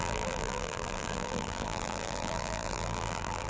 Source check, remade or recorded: remade